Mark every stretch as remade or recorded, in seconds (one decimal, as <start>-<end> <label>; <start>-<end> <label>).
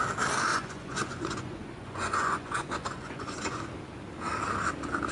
0.0-0.5 recorded; 0.5-3.6 remade; 3.6-5.1 recorded